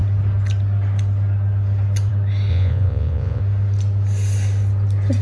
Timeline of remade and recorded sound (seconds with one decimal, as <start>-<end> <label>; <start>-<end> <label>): 0.0-2.5 recorded; 2.5-3.4 remade; 3.4-5.2 recorded